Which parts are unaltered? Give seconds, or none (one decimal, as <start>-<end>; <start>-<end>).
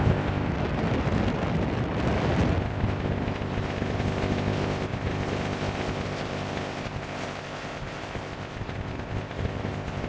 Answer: 0.5-2.6